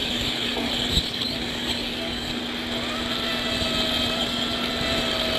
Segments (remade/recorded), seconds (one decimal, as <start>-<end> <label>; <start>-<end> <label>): 0.0-0.7 remade; 0.7-1.1 recorded; 1.1-2.4 remade; 2.4-5.4 recorded